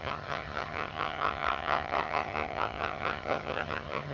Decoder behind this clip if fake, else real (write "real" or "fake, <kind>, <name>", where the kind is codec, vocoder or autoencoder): fake, vocoder, HiFi-GAN